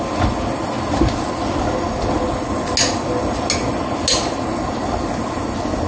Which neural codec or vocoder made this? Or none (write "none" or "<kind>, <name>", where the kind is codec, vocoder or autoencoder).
none